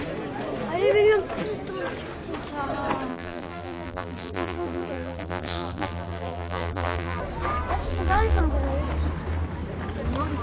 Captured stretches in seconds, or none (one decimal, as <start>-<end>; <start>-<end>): 0.0-3.1; 7.2-7.9; 8.4-10.4